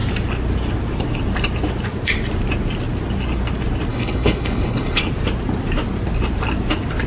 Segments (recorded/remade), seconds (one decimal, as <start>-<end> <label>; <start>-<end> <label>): 0.0-3.9 recorded; 3.9-5.0 remade; 5.0-7.1 recorded